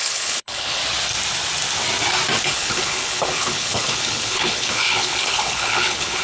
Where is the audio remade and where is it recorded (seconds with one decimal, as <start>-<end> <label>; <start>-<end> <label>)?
0.0-0.8 remade; 0.8-2.4 recorded; 2.4-6.2 remade